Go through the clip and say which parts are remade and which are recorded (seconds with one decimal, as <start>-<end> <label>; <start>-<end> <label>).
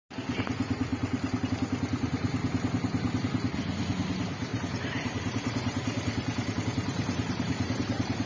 0.0-0.9 recorded; 0.9-1.5 remade; 1.5-4.5 recorded; 4.5-8.3 remade